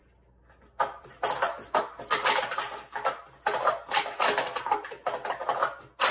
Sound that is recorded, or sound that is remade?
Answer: recorded